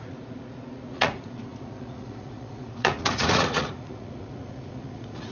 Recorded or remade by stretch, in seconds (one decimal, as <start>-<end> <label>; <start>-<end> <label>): 0.0-5.3 remade